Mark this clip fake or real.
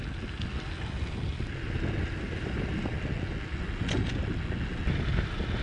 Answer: real